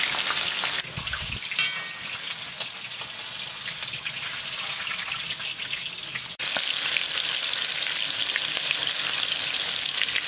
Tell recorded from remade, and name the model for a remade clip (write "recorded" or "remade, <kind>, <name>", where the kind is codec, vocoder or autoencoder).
recorded